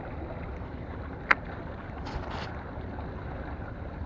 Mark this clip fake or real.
real